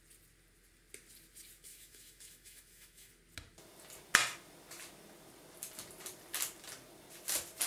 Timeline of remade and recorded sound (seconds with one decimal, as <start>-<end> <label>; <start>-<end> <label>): 0.0-1.7 recorded; 1.7-3.1 remade; 3.1-7.7 recorded